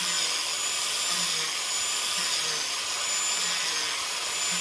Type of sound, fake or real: real